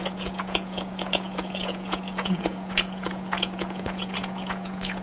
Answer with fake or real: fake